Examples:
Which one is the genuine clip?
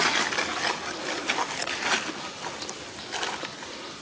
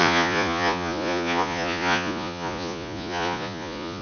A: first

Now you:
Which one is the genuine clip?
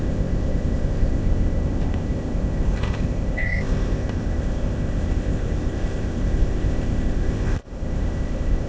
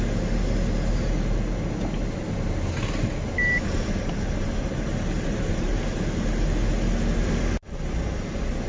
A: second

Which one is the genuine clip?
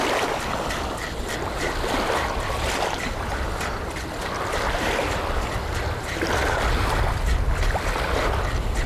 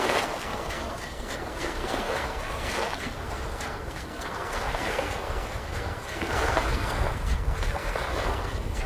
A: first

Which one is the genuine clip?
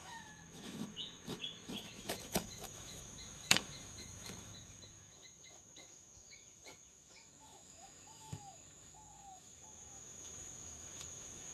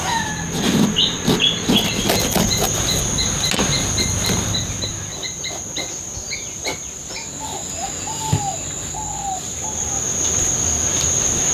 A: second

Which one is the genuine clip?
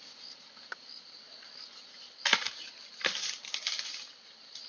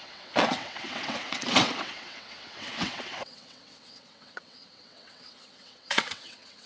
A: first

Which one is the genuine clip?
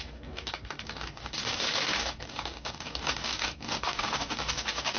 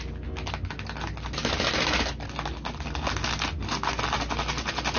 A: second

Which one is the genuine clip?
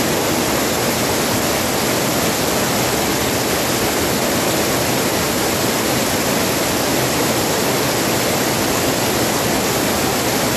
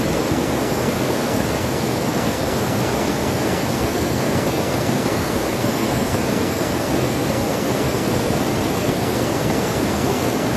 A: first